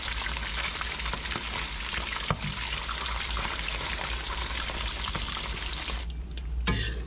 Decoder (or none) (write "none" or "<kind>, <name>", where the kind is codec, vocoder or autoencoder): none